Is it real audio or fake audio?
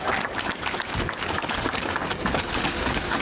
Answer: fake